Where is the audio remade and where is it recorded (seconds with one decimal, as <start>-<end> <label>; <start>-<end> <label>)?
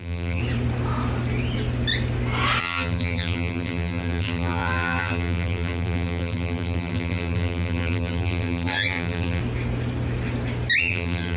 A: 0.0-0.4 remade; 0.4-2.6 recorded; 2.6-9.4 remade; 9.4-10.8 recorded; 10.8-11.4 remade